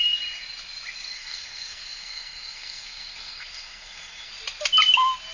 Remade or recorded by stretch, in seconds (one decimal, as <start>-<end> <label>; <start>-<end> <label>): 0.0-1.1 recorded; 1.1-4.3 remade; 4.3-5.3 recorded